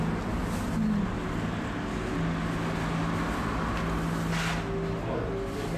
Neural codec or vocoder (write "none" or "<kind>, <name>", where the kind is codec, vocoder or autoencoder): none